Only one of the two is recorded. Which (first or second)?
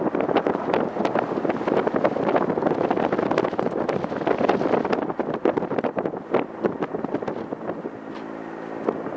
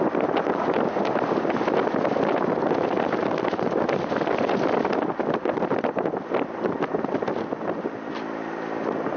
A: first